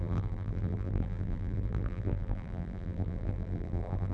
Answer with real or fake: fake